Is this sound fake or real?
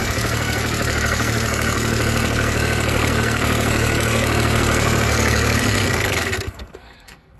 fake